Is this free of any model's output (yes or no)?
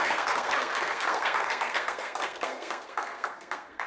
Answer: no